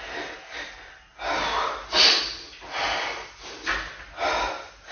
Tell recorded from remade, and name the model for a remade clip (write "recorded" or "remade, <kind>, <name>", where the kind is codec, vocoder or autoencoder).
recorded